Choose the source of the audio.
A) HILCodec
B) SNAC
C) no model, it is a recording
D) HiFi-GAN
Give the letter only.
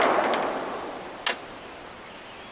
C